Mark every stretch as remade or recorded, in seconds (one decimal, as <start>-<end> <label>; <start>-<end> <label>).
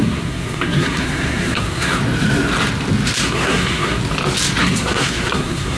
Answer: 0.0-2.0 remade; 2.0-3.2 recorded; 3.2-4.0 remade; 4.0-4.6 recorded; 4.6-5.8 remade